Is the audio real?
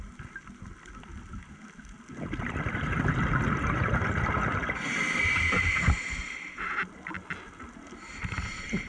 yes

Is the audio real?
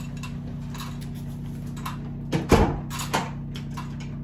yes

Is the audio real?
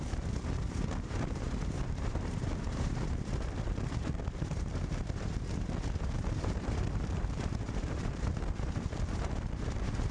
no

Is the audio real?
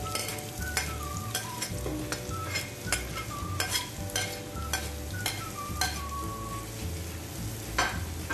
yes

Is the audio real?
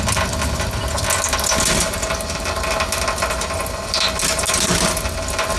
yes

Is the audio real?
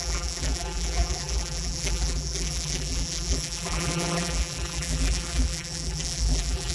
no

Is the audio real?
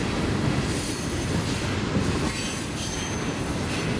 yes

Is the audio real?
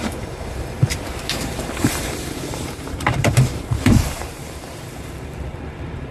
no